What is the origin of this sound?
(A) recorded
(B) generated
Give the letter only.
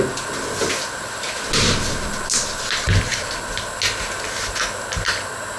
A